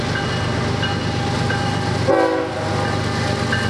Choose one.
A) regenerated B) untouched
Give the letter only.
B